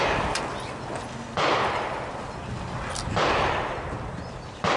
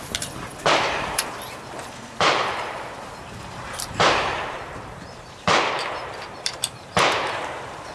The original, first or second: first